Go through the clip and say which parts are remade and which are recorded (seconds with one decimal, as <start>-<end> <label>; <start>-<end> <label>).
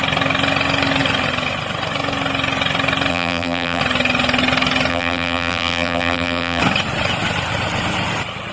0.0-3.1 recorded; 3.1-3.8 remade; 3.8-4.9 recorded; 4.9-6.6 remade; 6.6-8.5 recorded